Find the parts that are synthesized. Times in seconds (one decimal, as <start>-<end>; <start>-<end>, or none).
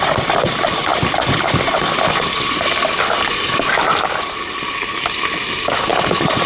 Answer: none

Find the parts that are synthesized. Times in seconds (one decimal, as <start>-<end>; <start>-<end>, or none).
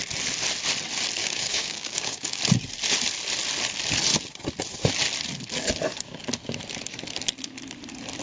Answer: 1.2-2.4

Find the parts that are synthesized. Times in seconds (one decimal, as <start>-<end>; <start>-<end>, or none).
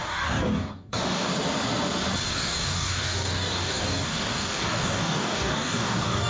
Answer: 0.0-1.3; 2.3-6.3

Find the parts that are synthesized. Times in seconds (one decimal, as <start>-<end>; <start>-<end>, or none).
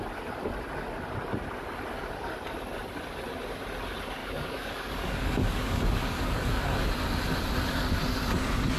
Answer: 4.2-6.9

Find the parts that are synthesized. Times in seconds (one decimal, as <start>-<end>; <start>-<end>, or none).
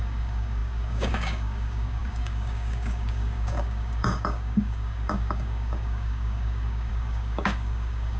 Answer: 0.0-8.2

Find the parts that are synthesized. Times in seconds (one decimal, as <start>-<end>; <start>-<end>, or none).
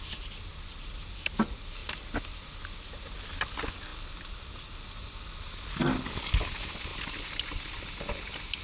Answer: none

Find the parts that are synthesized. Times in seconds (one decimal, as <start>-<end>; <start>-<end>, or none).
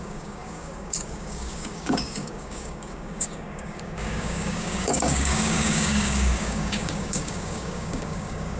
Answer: 0.0-8.6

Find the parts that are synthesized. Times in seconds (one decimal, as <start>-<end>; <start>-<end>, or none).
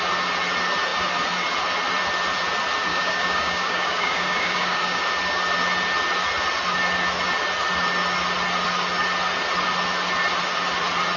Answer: 2.9-5.0